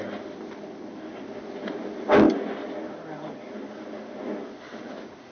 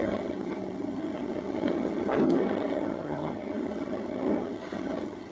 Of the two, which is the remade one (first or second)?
second